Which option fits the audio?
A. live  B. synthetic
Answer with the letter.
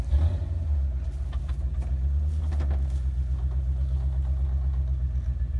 A